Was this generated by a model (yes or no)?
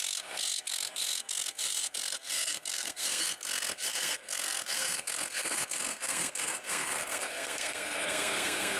yes